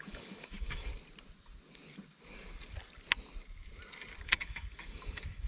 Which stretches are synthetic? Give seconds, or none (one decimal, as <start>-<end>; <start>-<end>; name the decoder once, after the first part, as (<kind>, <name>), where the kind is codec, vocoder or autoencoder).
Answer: 0.0-0.9 (codec, DAC); 4.2-5.5